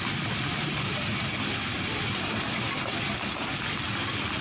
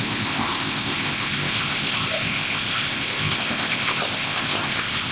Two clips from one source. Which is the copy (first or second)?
second